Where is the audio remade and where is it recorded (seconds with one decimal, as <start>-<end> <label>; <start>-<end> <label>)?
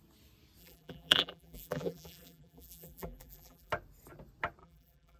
0.0-0.6 recorded; 0.6-3.7 remade; 3.7-4.6 recorded; 4.6-5.2 remade